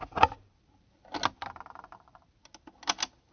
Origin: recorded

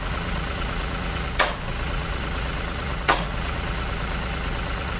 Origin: remade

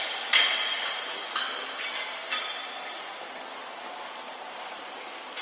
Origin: recorded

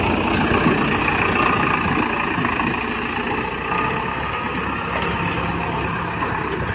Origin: recorded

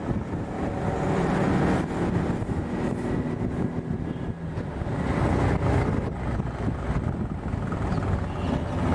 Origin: recorded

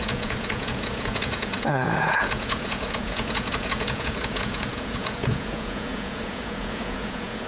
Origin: remade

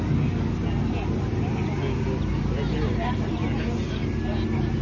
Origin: recorded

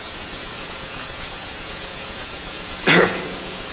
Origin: remade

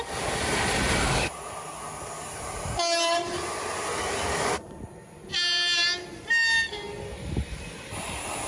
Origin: recorded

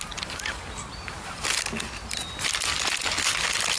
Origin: recorded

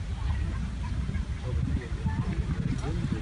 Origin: recorded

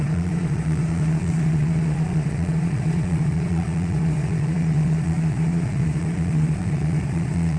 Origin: remade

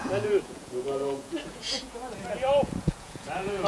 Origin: remade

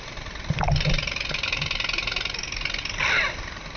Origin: recorded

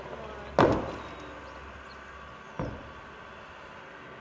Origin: recorded